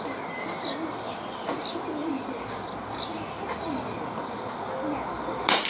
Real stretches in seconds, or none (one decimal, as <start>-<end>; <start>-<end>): 0.0-5.7